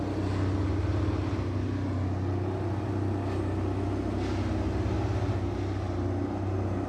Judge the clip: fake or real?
real